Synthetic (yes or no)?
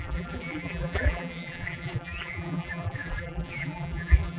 yes